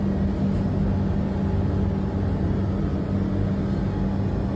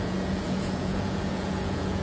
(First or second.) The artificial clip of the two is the second